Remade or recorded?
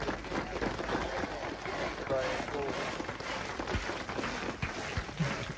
recorded